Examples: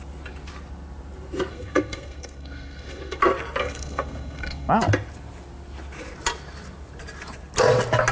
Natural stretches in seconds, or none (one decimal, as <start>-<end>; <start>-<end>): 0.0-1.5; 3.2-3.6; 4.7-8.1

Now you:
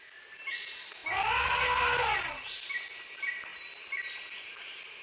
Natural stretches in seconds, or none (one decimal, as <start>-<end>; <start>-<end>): 0.0-5.0

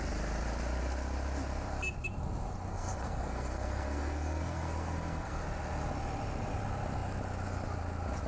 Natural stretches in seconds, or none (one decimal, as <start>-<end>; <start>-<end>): 0.0-2.7; 5.4-8.3

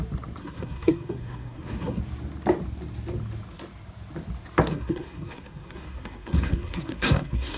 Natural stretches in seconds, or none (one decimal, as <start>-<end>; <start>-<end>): 0.0-0.4; 2.0-4.7

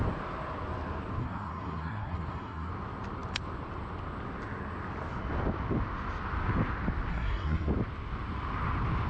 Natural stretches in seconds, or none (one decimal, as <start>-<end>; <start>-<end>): 0.0-1.2; 2.7-7.1; 7.7-9.1